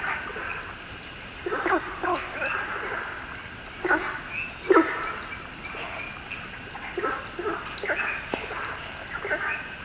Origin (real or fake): real